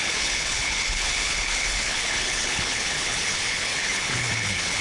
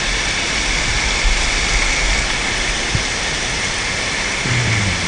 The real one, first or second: second